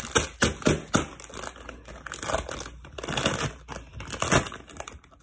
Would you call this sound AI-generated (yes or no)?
no